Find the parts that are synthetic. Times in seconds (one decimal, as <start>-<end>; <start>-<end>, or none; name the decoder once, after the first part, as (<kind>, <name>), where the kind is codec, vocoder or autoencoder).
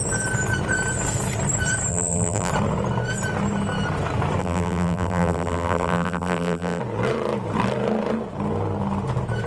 1.9-2.5 (vocoder, BigVGAN v2); 4.4-6.8